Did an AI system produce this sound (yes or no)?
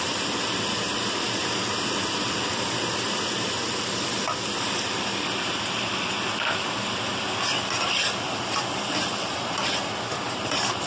no